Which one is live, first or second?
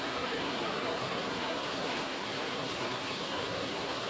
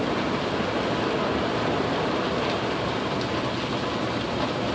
second